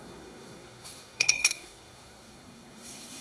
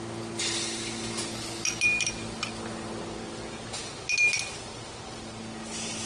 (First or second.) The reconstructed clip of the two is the first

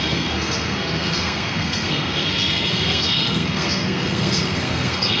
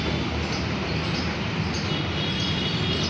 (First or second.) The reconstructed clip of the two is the first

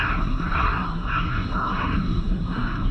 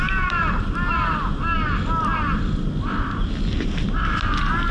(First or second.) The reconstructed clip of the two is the first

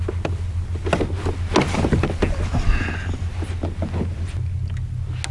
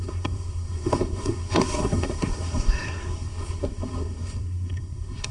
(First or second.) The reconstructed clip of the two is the second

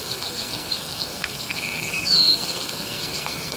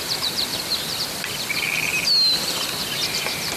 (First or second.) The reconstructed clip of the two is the first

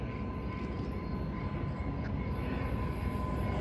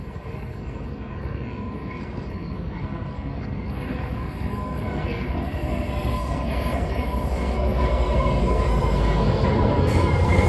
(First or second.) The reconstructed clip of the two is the second